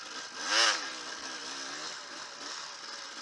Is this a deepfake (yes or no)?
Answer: no